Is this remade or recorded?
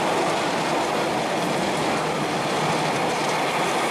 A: recorded